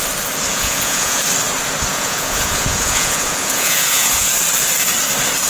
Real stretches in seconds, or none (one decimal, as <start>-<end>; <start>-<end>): 0.0-0.5; 1.2-1.9; 4.3-5.5